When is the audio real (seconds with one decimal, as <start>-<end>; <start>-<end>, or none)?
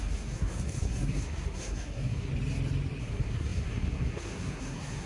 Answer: 2.3-3.0